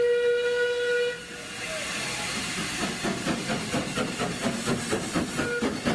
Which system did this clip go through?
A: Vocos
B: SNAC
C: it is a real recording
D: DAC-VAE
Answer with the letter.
C